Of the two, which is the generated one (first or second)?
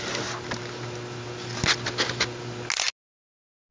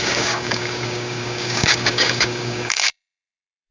second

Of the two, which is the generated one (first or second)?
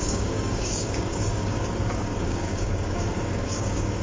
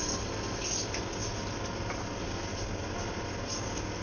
first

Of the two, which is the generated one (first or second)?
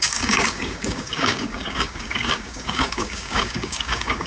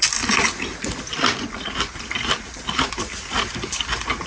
first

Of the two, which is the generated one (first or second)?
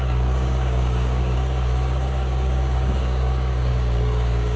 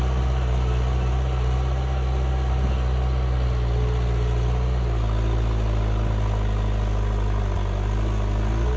first